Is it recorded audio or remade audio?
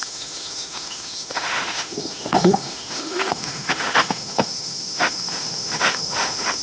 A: remade